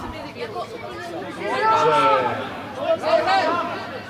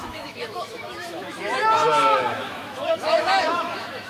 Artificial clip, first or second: second